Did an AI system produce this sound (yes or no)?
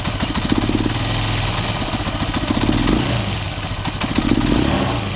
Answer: no